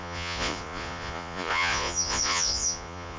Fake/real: fake